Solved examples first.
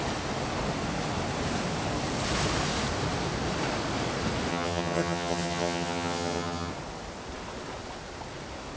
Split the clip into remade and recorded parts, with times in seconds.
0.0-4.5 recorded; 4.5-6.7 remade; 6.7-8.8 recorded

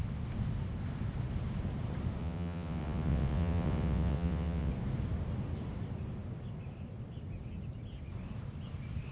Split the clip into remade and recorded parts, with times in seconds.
0.0-2.2 recorded; 2.2-4.7 remade; 4.7-9.1 recorded

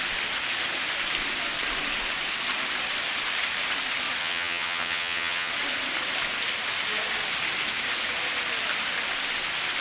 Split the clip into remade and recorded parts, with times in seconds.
0.0-4.2 recorded; 4.2-5.5 remade; 5.5-9.8 recorded